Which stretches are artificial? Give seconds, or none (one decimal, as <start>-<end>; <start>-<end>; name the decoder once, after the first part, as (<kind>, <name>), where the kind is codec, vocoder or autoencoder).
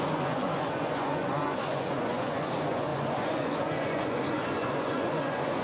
0.0-5.6 (vocoder, Vocos)